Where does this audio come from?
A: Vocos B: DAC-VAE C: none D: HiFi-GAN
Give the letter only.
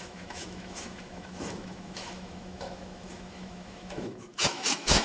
B